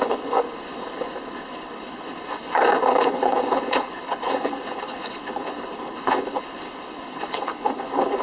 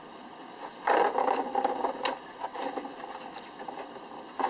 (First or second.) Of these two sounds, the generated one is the first